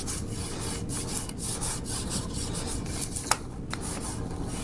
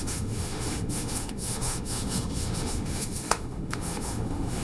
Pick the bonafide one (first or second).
first